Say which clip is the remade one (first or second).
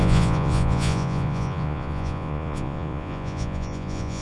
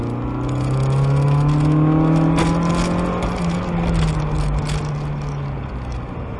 first